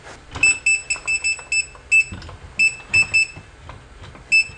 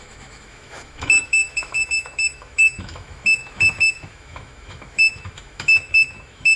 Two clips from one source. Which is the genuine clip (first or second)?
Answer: first